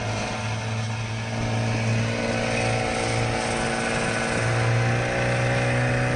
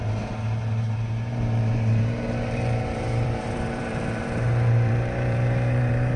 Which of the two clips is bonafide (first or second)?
first